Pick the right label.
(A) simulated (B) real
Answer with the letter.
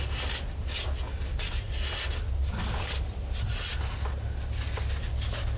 B